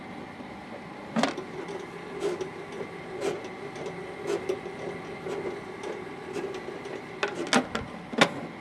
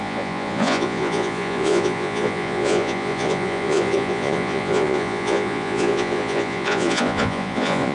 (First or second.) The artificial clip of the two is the second